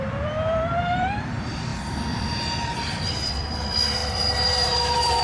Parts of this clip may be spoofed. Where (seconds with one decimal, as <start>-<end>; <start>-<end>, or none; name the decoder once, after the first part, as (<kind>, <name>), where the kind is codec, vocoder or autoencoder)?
0.0-5.2 (vocoder, BigVGAN v2)